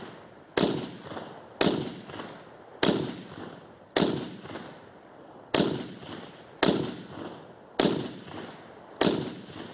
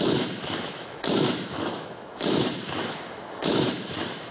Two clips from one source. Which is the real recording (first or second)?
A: first